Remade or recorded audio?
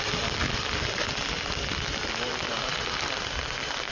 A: recorded